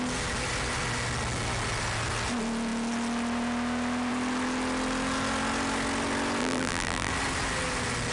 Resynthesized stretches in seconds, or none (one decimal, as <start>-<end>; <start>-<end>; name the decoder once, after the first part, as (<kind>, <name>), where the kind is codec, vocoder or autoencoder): 6.4-7.1 (vocoder, BigVGAN v2)